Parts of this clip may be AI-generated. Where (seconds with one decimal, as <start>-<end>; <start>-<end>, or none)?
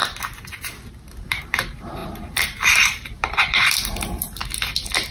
1.1-4.4